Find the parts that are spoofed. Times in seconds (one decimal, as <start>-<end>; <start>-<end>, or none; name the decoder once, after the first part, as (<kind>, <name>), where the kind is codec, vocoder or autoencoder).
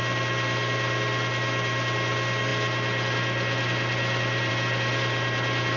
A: none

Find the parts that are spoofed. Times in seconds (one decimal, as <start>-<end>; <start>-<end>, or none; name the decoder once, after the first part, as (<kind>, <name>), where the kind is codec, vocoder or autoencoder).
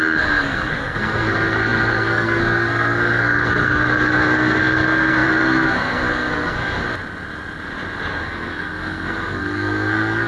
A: 0.0-6.8 (codec, SNAC); 8.1-10.3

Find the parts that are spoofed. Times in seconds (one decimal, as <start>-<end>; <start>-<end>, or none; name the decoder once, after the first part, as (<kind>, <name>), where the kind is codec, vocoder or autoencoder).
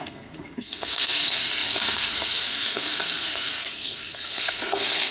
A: 0.0-5.1 (codec, SNAC)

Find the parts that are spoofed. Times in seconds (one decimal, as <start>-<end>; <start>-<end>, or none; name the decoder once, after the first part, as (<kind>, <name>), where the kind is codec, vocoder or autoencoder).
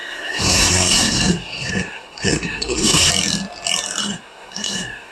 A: 0.0-3.1 (codec, SNAC); 4.0-5.1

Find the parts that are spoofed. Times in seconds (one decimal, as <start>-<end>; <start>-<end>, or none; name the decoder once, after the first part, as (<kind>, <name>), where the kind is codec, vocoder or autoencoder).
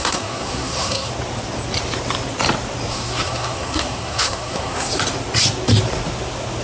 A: 0.0-1.1 (codec, SNAC); 2.9-4.9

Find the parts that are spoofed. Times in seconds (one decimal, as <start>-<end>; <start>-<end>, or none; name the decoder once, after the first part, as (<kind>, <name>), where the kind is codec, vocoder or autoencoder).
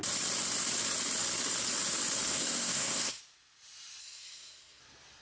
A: 2.3-3.2 (codec, SNAC); 4.0-4.8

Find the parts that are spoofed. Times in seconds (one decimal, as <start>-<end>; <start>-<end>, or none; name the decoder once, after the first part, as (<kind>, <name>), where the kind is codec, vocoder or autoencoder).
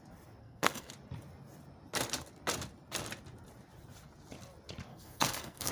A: 0.4-0.9 (codec, SNAC); 4.9-5.7